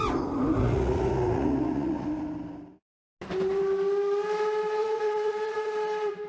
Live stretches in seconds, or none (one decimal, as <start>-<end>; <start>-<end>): 0.0-0.6; 2.1-4.8; 5.7-6.3